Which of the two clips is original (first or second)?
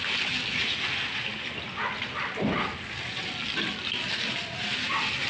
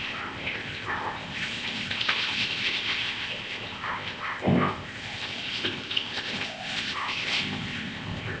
first